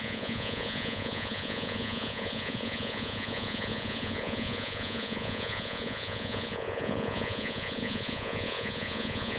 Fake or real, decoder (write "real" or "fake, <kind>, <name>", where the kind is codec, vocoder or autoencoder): fake, vocoder, Vocos